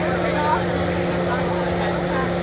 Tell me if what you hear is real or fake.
real